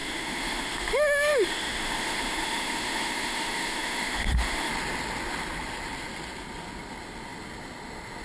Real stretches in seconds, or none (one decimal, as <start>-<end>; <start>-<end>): 4.7-8.2